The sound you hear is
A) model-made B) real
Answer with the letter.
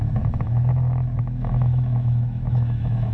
A